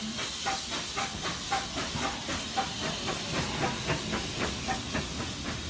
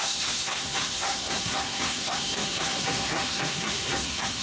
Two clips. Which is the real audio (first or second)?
first